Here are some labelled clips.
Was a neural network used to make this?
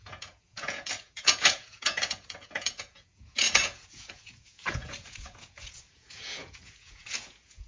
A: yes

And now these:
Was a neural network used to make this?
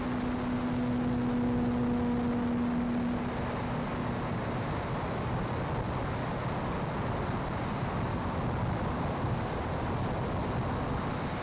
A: no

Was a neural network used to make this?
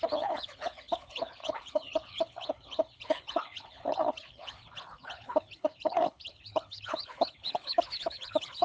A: yes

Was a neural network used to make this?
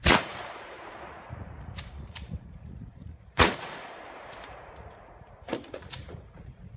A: yes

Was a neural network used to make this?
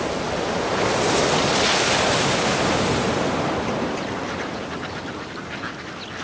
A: no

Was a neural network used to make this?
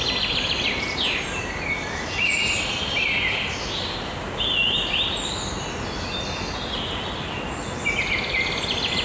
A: no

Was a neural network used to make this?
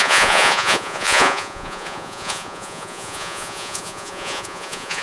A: yes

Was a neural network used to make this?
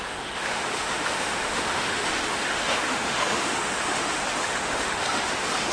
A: yes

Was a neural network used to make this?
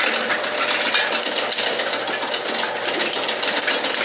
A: no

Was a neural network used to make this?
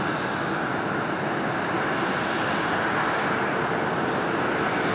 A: no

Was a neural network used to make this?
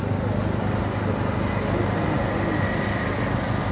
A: no